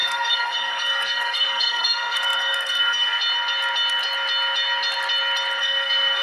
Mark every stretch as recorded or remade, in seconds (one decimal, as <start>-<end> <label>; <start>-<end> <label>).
0.0-3.2 remade; 3.2-5.6 recorded; 5.6-6.2 remade